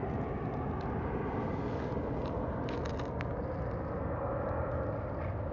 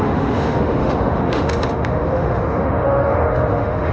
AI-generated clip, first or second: second